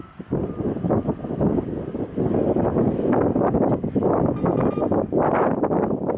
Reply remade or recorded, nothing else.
recorded